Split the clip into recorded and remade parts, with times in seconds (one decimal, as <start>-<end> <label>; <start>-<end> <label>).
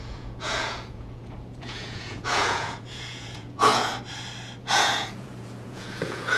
0.0-3.9 remade; 3.9-4.6 recorded; 4.6-6.4 remade